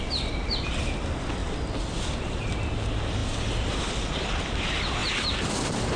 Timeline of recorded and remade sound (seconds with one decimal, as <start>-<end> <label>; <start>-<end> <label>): 0.0-1.4 recorded; 1.4-2.5 remade; 2.5-3.2 recorded; 3.2-3.7 remade; 3.7-5.0 recorded; 5.0-6.0 remade